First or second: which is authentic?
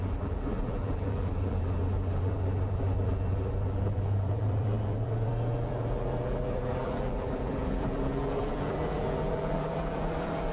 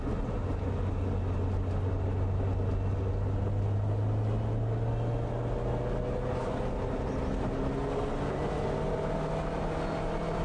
second